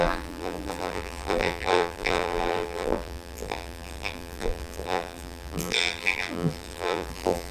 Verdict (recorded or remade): remade